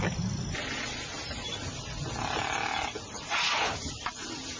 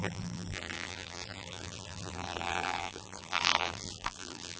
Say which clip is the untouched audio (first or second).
first